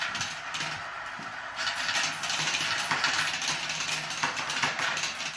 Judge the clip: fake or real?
real